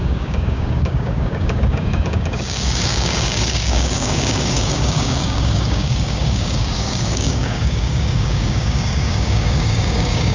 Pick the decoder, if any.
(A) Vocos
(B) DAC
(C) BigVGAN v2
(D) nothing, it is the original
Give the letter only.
B